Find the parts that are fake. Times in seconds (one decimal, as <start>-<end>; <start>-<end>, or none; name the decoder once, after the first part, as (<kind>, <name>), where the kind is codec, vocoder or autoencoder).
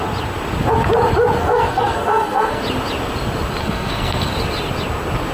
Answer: 1.4-2.6 (codec, SNAC); 3.6-4.3